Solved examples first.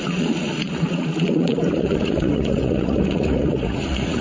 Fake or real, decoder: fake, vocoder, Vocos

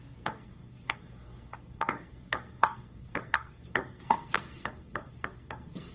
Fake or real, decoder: fake, codec, SNAC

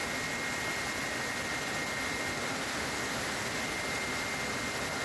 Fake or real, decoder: real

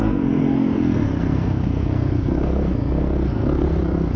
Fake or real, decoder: fake, codec, SNAC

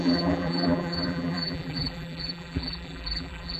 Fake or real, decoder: fake, vocoder, BigVGAN v2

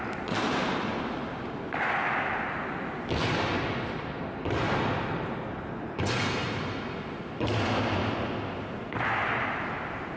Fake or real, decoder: real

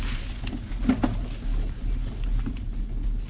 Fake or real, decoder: real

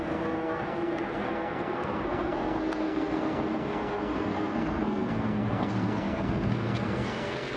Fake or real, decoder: fake, codec, SNAC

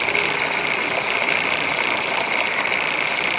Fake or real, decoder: real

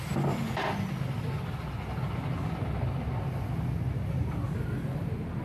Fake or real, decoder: real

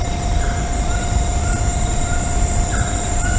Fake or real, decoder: real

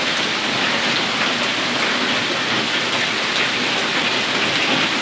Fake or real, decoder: real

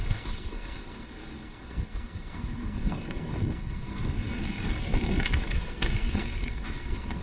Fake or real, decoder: fake, codec, SNAC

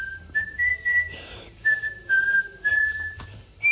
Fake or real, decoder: fake, vocoder, BigVGAN v2